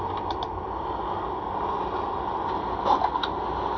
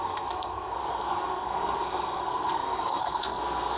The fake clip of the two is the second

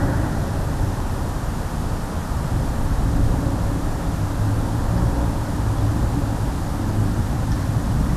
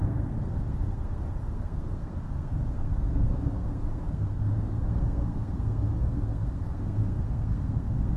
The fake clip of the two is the second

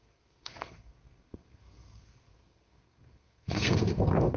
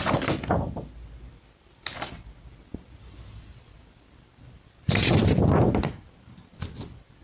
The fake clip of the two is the first